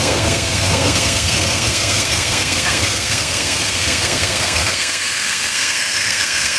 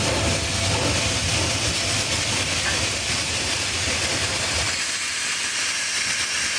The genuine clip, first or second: second